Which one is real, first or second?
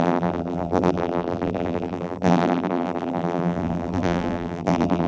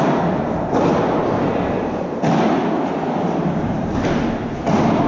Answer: second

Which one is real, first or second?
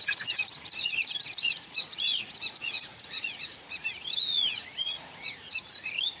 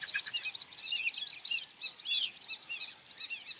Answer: second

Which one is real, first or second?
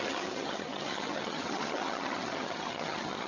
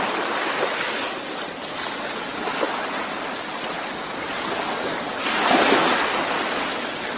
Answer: second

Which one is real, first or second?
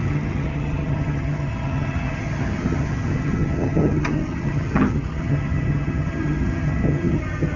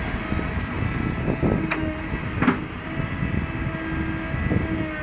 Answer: second